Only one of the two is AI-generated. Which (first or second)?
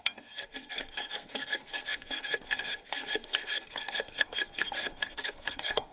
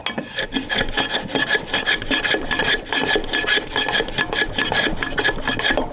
first